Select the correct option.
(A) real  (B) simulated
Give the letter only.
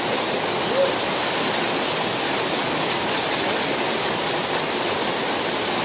A